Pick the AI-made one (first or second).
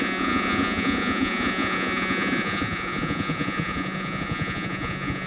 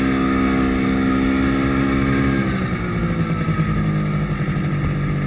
first